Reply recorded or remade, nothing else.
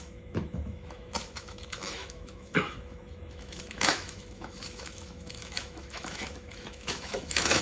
remade